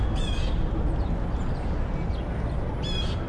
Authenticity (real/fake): real